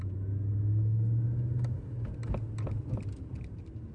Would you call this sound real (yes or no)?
yes